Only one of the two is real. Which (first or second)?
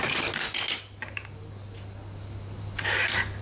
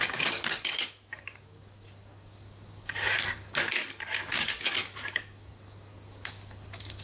first